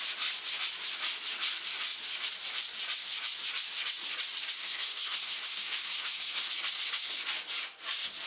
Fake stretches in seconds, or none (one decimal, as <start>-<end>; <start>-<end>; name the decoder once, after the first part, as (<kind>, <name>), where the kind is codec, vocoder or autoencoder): 4.6-6.5 (codec, SNAC)